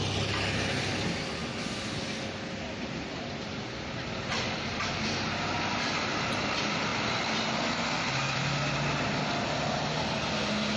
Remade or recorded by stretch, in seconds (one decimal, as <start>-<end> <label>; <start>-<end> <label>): 0.0-10.8 recorded